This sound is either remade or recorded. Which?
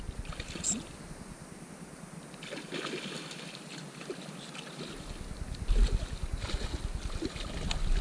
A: recorded